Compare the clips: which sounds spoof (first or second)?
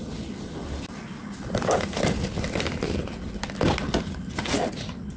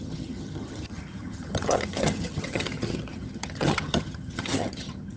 second